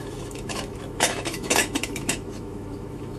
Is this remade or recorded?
remade